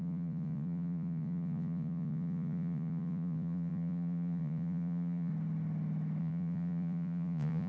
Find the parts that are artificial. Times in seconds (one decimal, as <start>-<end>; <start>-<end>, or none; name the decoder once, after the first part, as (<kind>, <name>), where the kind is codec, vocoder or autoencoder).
0.0-5.3 (vocoder, Vocos); 6.2-7.7